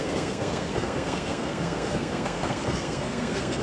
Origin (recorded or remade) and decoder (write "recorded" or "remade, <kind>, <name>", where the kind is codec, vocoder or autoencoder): remade, codec, SNAC